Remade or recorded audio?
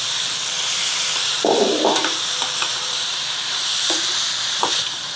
remade